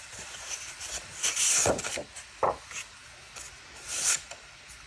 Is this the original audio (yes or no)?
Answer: yes